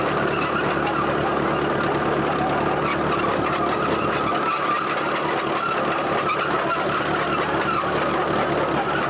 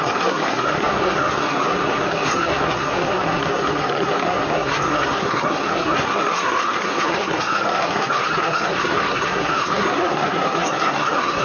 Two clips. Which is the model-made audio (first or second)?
second